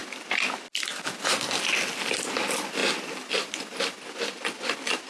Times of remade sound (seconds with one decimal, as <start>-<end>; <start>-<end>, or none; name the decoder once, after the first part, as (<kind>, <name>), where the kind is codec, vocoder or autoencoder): none